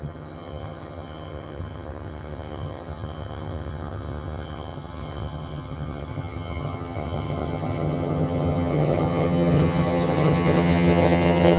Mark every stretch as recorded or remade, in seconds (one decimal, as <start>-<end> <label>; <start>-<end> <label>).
0.0-11.6 remade